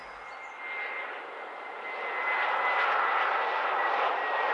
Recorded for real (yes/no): yes